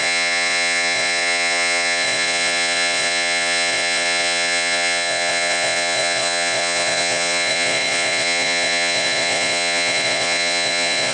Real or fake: fake